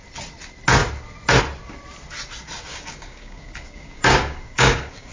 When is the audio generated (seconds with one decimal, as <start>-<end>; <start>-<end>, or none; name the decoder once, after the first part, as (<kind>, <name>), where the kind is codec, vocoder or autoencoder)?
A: 2.7-5.1 (codec, DAC)